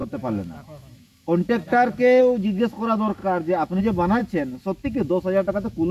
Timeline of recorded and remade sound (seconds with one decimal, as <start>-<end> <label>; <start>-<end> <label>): 0.0-4.2 remade; 4.2-5.5 recorded; 5.5-5.9 remade